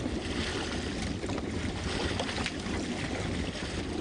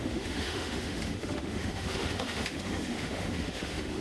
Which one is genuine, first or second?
first